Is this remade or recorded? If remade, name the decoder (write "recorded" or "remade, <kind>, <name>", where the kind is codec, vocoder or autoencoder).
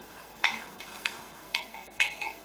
remade, codec, SNAC